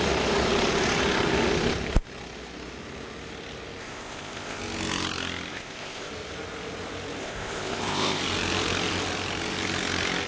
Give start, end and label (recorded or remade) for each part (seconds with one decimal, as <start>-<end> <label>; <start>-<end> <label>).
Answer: 0.0-3.8 recorded; 3.8-4.6 remade; 4.6-5.5 recorded; 5.5-6.1 remade; 6.1-7.2 recorded; 7.2-8.2 remade; 8.2-10.3 recorded